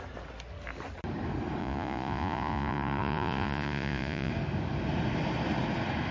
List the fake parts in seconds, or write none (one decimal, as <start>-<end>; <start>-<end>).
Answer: 1.6-4.3